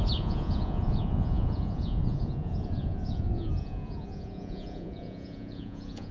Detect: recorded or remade remade